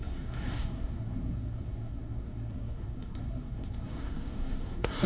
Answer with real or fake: fake